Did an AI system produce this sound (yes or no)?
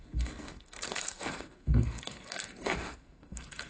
yes